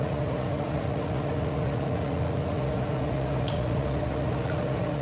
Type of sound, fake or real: fake